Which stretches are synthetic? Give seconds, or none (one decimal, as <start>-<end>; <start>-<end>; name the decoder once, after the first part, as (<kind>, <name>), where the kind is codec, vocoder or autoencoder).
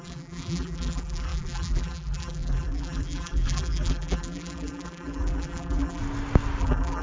0.0-6.0 (vocoder, BigVGAN v2); 6.6-7.0